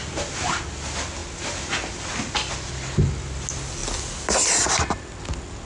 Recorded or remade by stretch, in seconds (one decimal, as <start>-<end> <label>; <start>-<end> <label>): 0.0-5.7 recorded